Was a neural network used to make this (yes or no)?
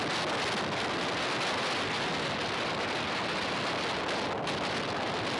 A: no